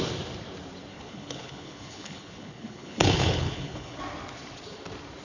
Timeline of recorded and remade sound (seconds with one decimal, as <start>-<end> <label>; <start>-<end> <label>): 0.0-0.9 recorded; 0.9-4.0 remade; 4.0-5.2 recorded